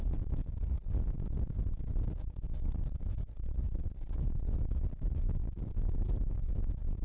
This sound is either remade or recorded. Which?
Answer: recorded